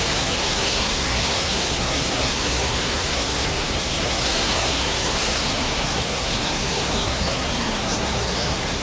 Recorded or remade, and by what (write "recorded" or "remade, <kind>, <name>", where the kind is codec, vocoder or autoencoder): remade, codec, SNAC